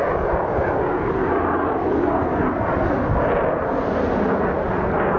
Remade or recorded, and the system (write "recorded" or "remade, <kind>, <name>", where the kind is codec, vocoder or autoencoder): recorded